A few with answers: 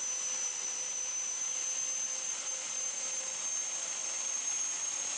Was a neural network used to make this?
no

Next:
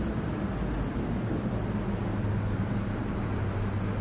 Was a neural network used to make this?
no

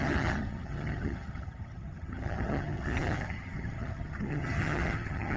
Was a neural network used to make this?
yes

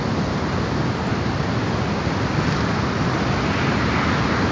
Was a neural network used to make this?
no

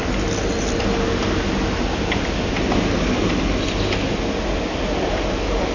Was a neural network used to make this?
no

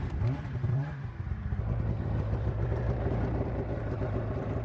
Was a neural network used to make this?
yes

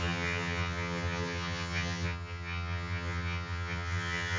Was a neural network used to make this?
yes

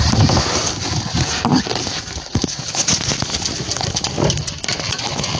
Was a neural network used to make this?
no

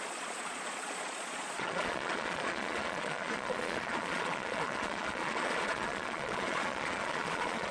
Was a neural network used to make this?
yes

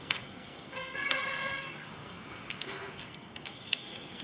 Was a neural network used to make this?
yes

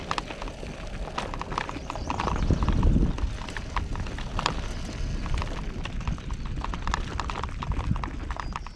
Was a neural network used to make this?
no